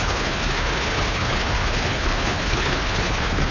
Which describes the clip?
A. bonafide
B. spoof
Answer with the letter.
B